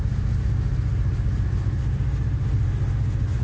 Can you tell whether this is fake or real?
real